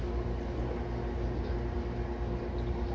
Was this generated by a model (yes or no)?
no